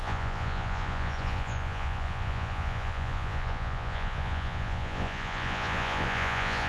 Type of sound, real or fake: fake